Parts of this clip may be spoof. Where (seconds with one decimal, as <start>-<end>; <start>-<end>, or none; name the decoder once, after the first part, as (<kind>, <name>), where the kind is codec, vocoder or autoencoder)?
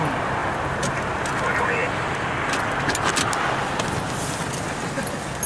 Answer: none